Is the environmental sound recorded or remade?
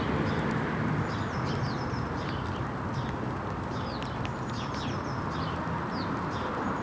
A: recorded